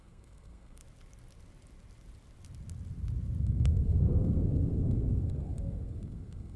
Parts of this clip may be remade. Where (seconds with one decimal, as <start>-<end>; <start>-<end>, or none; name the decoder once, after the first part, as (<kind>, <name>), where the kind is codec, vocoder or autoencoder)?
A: 0.0-0.8 (codec, SNAC); 3.4-6.6